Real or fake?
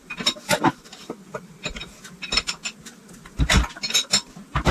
real